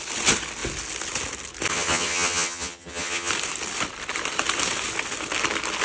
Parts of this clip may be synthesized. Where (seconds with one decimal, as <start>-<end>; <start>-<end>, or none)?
1.7-3.3